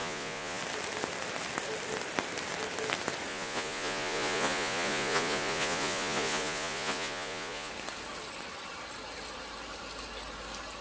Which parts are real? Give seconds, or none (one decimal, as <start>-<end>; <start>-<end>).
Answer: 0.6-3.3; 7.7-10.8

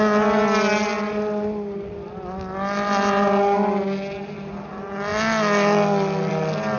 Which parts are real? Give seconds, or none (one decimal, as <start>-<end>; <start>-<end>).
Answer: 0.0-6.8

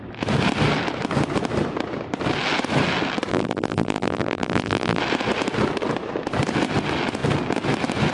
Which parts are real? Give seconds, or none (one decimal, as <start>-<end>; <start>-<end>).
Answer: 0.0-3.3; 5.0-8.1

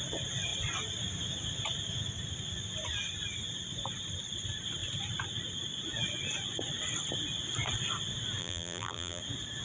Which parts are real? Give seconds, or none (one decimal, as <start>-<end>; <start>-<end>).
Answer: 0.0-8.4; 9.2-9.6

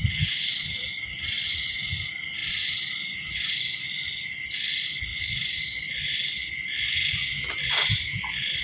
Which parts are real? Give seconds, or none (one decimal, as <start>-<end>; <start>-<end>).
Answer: 6.4-7.7